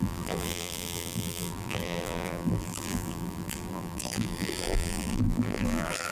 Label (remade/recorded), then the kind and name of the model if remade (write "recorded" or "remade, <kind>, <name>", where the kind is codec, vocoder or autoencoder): remade, vocoder, BigVGAN v2